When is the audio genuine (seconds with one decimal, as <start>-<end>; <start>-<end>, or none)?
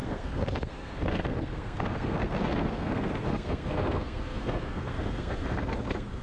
none